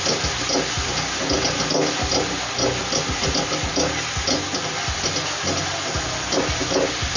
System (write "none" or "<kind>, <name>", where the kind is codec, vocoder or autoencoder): none